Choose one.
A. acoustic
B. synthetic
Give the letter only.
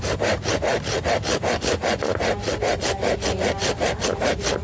A